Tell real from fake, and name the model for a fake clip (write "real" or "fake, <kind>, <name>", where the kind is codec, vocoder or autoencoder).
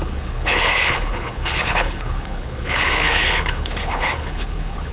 fake, codec, HILCodec